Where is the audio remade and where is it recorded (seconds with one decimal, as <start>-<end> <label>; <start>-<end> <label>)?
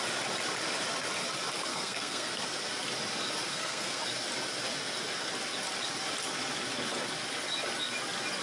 0.0-1.7 recorded; 1.7-2.3 remade; 2.3-3.5 recorded; 3.5-4.0 remade; 4.0-8.4 recorded